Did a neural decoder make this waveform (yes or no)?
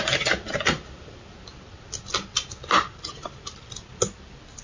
no